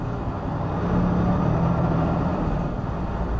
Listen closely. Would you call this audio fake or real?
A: real